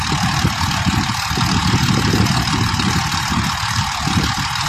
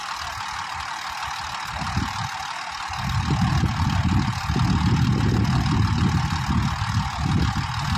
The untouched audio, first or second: second